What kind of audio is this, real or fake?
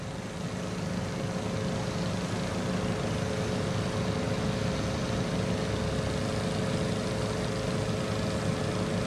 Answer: real